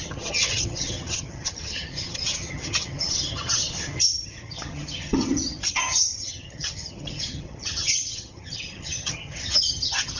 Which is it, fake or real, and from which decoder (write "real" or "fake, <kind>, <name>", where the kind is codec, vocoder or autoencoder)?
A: fake, vocoder, HiFi-GAN